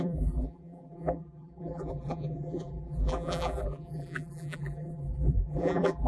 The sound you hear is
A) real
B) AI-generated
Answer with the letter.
B